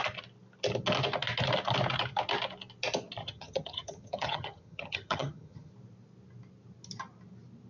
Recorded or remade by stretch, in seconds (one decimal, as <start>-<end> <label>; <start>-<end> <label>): 0.0-3.2 recorded; 3.2-5.7 remade; 5.7-7.7 recorded